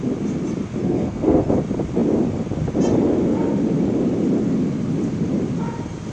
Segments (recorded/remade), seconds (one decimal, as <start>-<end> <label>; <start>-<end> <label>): 0.0-0.8 recorded; 0.8-1.5 remade; 1.5-6.1 recorded